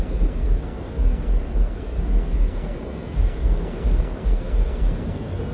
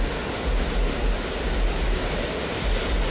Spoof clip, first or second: first